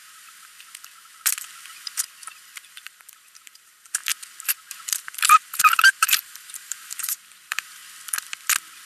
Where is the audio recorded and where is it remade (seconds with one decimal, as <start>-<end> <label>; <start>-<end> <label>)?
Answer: 0.0-0.5 remade; 0.5-2.7 recorded; 2.7-4.0 remade; 4.0-5.0 recorded; 5.0-7.8 remade; 7.8-8.9 recorded